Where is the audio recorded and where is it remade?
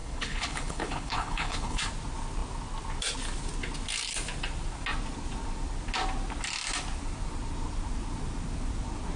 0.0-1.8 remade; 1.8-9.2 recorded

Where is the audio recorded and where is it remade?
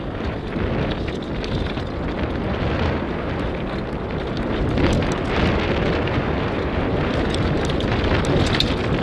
0.0-9.0 recorded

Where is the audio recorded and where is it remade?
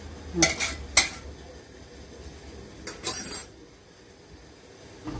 0.0-5.2 recorded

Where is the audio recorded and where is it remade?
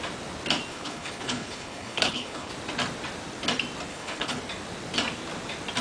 0.0-0.7 recorded; 0.7-2.5 remade; 2.5-3.9 recorded; 3.9-4.4 remade; 4.4-5.8 recorded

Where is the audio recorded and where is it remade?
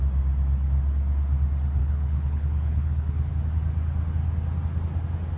0.0-1.8 recorded; 1.8-3.3 remade; 3.3-5.4 recorded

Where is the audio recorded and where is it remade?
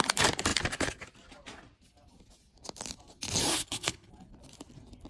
0.0-3.5 recorded; 3.5-4.1 remade; 4.1-5.1 recorded